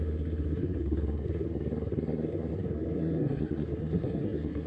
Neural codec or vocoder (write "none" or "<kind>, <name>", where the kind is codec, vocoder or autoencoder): codec, SNAC